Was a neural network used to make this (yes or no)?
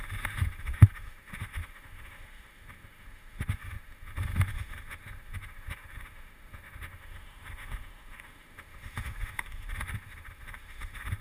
yes